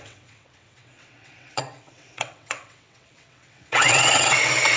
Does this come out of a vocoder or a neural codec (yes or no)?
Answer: yes